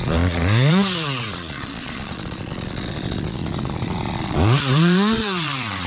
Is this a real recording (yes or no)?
no